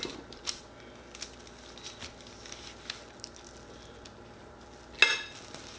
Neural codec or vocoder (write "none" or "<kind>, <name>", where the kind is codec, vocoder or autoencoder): none